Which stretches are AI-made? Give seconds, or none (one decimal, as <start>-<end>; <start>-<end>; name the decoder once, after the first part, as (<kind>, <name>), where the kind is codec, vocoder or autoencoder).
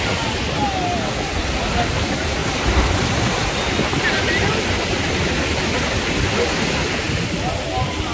2.4-4.6 (vocoder, BigVGAN v2)